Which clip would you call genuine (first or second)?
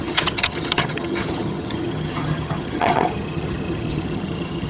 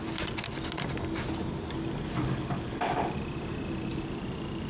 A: second